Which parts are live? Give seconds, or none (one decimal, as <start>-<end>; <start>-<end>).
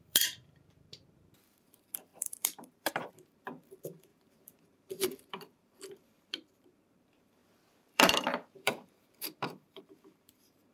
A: none